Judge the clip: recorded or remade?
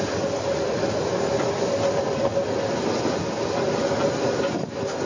recorded